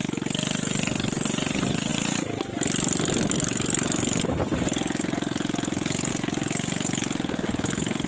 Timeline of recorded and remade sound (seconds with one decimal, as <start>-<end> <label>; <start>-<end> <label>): 0.0-8.1 recorded